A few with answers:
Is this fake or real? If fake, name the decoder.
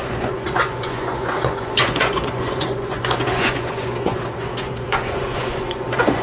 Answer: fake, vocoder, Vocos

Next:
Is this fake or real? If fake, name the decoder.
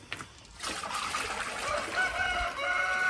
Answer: real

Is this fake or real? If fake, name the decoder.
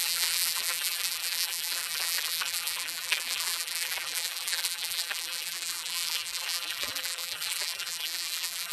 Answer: fake, vocoder, BigVGAN v2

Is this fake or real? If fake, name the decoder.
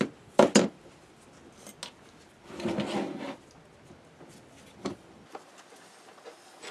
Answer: real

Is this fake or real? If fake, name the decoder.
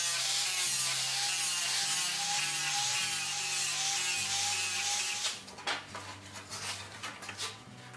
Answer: real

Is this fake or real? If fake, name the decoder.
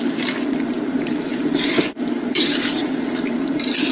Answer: fake, vocoder, BigVGAN v2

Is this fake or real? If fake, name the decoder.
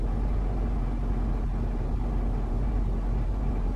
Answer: real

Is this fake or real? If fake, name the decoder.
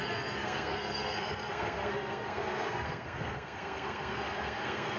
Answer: fake, codec, SNAC